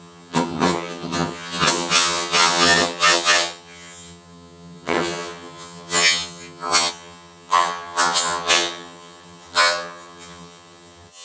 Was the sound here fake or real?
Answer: fake